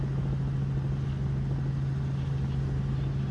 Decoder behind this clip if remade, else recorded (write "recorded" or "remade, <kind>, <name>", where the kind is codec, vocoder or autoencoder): recorded